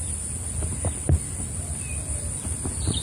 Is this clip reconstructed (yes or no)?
no